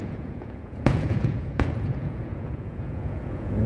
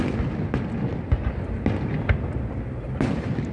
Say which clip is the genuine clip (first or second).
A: second